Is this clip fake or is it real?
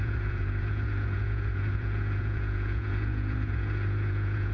fake